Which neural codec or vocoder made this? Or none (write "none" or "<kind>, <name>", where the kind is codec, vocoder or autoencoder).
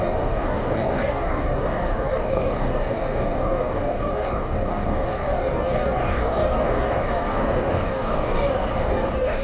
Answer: codec, DAC